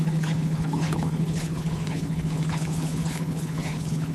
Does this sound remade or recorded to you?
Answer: remade